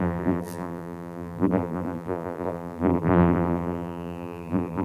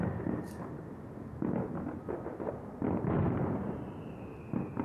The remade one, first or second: first